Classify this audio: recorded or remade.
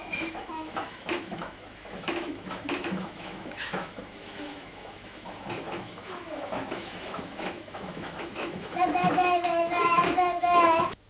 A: remade